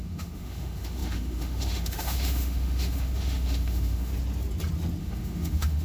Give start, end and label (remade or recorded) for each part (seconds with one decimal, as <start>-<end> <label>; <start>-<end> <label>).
0.0-4.1 remade; 4.1-5.0 recorded; 5.0-5.8 remade

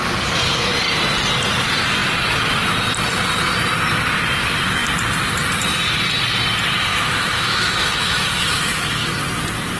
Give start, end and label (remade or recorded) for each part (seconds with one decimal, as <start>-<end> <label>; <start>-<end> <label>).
0.0-6.9 recorded; 6.9-9.1 remade; 9.1-9.8 recorded

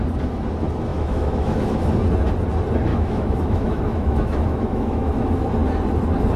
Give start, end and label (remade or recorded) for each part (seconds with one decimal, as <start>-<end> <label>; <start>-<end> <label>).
0.0-0.9 recorded; 0.9-1.9 remade; 1.9-2.9 recorded; 2.9-5.1 remade; 5.1-6.4 recorded

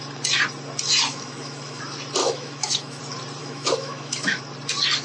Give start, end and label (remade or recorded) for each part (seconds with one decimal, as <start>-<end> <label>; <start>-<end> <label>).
0.0-1.1 recorded; 1.1-1.8 remade; 1.8-2.2 recorded; 2.2-3.0 remade; 3.0-3.4 recorded; 3.4-4.4 remade; 4.4-5.0 recorded

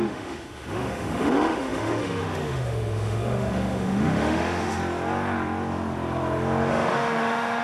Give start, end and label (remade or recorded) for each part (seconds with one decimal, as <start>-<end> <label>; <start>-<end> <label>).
0.0-4.8 remade; 4.8-6.7 recorded; 6.7-7.6 remade